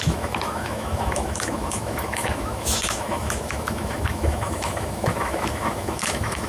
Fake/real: fake